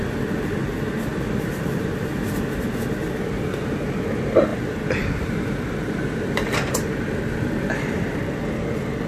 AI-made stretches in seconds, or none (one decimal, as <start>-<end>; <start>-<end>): 1.1-1.7; 4.5-8.2